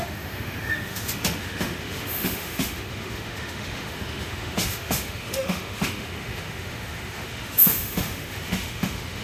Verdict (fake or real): fake